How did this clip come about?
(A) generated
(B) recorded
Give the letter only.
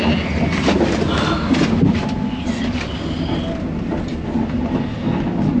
B